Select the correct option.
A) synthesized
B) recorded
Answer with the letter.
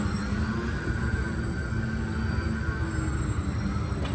B